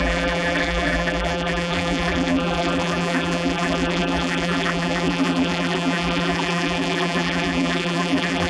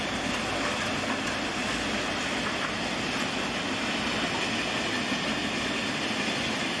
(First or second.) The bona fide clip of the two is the second